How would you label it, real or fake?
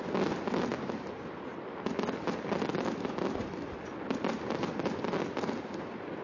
real